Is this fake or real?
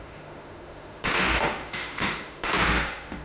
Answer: fake